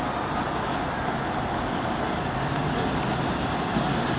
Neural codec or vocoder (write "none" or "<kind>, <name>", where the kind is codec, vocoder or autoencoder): none